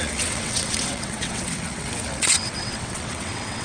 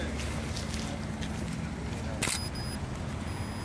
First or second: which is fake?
first